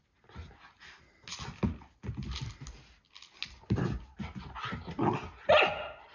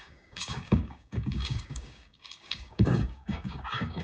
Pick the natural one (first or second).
first